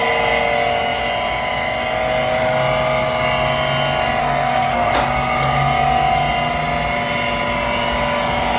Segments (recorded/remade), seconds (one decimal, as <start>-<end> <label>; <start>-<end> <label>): 0.0-4.2 recorded; 4.2-4.9 remade; 4.9-8.6 recorded